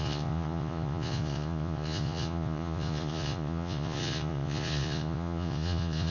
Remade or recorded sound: remade